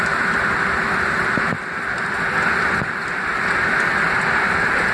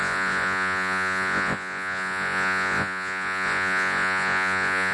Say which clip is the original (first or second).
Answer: first